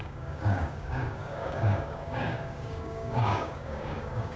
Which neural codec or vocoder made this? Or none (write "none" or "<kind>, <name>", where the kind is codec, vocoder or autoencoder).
codec, DAC